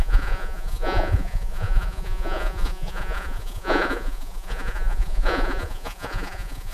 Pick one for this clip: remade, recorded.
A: remade